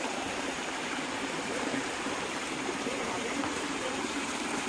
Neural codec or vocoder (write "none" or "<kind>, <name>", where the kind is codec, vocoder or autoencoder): vocoder, BigVGAN v2